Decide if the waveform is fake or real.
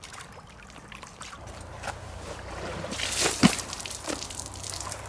real